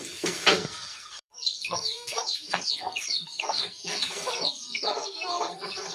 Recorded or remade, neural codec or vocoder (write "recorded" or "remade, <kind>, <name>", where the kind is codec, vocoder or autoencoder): remade, codec, SNAC